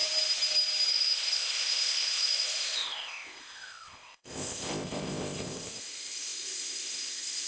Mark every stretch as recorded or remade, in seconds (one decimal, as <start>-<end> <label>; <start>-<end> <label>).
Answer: 0.0-0.9 recorded; 0.9-7.5 remade